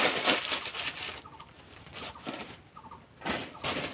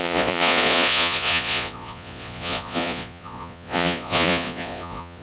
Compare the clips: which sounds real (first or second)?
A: first